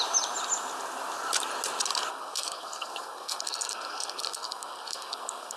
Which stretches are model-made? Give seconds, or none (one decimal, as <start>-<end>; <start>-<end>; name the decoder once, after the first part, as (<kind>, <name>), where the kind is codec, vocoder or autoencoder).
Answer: 2.1-5.6 (codec, SNAC)